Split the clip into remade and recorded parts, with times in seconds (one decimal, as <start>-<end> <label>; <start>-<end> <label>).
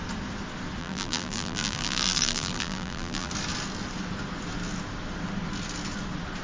0.0-0.8 recorded; 0.8-3.3 remade; 3.3-6.4 recorded